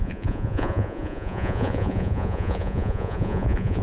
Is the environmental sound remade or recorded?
remade